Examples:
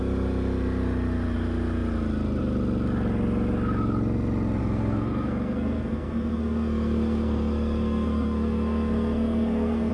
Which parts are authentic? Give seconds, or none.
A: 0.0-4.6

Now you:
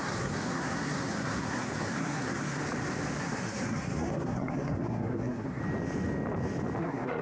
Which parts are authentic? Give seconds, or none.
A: 2.6-3.2; 5.6-6.8

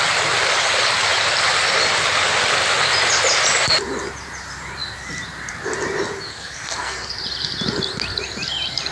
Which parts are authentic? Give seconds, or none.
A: 0.0-6.3; 7.1-8.9